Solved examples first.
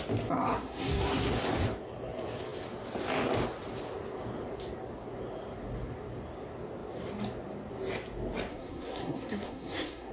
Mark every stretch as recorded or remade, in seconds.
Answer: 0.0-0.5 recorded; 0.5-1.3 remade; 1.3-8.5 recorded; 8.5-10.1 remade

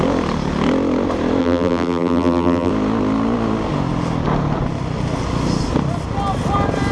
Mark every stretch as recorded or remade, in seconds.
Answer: 0.0-1.4 recorded; 1.4-2.7 remade; 2.7-6.9 recorded

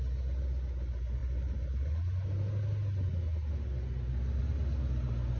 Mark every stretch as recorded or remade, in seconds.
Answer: 0.0-5.4 recorded

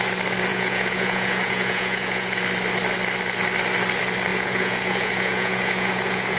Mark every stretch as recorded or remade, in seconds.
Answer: 0.0-0.5 recorded; 0.5-2.4 remade; 2.4-4.3 recorded; 4.3-6.4 remade

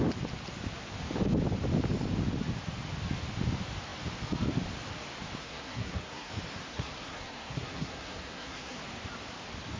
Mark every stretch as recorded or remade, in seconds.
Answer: 0.0-5.4 recorded; 5.4-6.3 remade; 6.3-6.7 recorded; 6.7-8.8 remade; 8.8-9.8 recorded

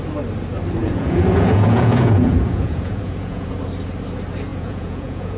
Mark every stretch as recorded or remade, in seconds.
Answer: 0.0-0.8 recorded; 0.8-3.5 remade; 3.5-4.5 recorded; 4.5-5.4 remade

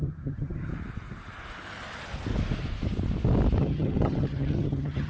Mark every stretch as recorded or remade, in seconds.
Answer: 0.0-0.7 remade; 0.7-3.6 recorded; 3.6-5.1 remade

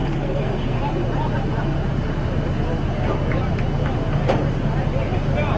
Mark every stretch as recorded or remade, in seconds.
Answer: 0.0-0.8 remade; 0.8-5.6 recorded